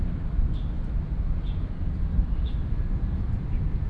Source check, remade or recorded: recorded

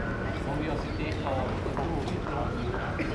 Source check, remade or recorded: recorded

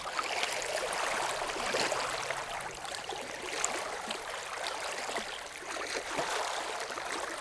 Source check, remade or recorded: recorded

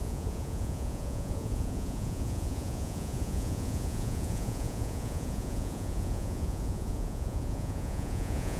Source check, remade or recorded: remade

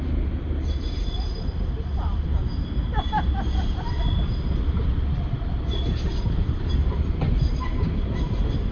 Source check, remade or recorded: recorded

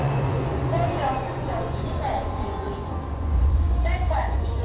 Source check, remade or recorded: remade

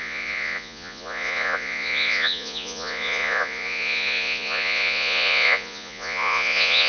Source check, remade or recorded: remade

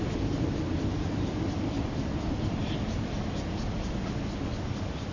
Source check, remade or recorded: recorded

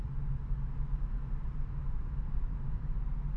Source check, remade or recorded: recorded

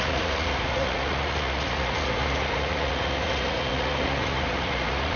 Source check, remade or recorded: remade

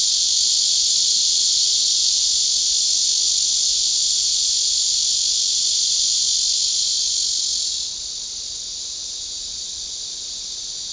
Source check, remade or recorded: recorded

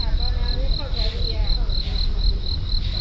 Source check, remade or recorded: recorded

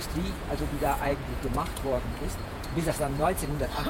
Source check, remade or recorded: remade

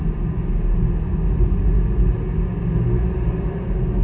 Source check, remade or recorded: recorded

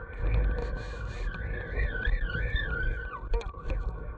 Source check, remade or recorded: recorded